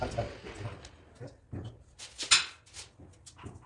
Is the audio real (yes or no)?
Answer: yes